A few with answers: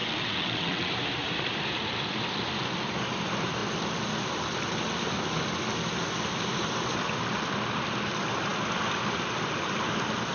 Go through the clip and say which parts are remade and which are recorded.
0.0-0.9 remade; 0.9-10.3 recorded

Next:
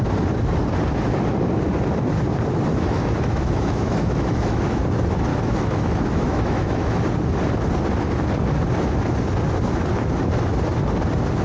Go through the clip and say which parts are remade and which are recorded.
0.0-2.7 recorded; 2.7-4.8 remade; 4.8-5.3 recorded; 5.3-7.0 remade; 7.0-11.4 recorded

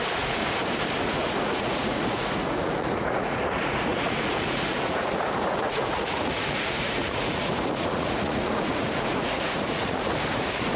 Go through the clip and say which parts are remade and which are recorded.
0.0-0.4 remade; 0.4-1.0 recorded; 1.0-10.8 remade

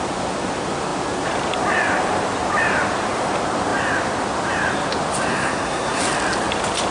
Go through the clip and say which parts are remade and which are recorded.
0.0-5.3 recorded; 5.3-6.0 remade; 6.0-6.9 recorded

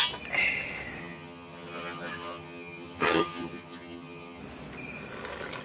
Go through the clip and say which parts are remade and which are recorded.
0.0-1.0 recorded; 1.0-4.4 remade; 4.4-5.6 recorded

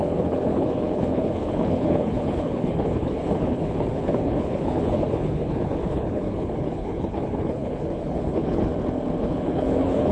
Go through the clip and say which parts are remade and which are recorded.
0.0-8.7 remade; 8.7-9.2 recorded; 9.2-10.1 remade

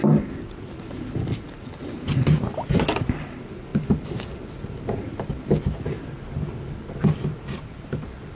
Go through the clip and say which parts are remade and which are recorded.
0.0-8.3 recorded